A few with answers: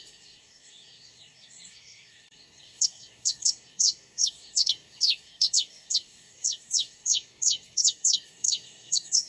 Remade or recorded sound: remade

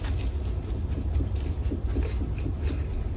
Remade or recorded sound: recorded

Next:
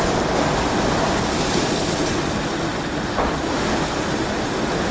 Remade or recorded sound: recorded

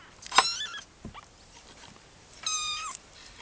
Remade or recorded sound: recorded